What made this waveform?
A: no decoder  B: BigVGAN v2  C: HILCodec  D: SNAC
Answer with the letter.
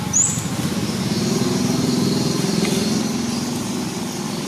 A